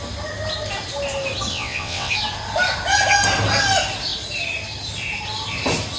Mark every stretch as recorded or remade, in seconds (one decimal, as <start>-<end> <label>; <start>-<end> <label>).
0.0-1.5 recorded; 1.5-2.1 remade; 2.1-6.0 recorded